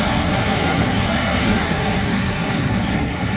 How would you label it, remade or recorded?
remade